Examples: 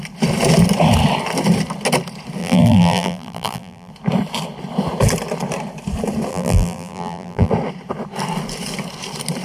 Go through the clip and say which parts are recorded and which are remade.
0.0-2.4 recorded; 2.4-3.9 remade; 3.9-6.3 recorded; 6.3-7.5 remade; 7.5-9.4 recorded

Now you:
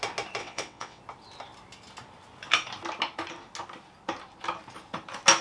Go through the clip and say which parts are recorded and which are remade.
0.0-0.4 recorded; 0.4-1.0 remade; 1.0-5.4 recorded

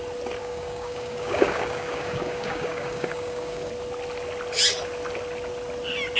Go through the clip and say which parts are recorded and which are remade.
0.0-0.4 recorded; 0.4-3.7 remade; 3.7-6.2 recorded

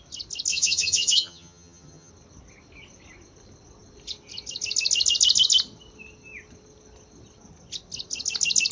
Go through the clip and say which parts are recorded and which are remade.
0.0-0.5 recorded; 0.5-2.1 remade; 2.1-8.7 recorded